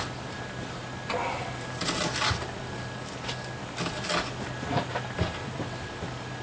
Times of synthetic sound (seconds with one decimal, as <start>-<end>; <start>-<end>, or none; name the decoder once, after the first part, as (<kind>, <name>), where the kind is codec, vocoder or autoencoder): 5.4-6.0 (vocoder, WaveNeXt)